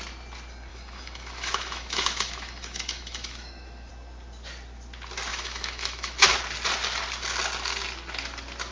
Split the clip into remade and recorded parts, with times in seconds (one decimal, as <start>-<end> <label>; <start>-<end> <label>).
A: 0.0-0.7 recorded; 0.7-3.9 remade; 3.9-5.3 recorded; 5.3-6.4 remade; 6.4-8.7 recorded